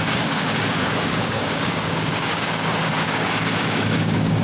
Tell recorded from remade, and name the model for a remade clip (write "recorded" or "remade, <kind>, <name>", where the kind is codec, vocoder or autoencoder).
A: remade, codec, DAC